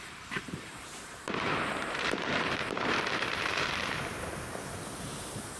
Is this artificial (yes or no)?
yes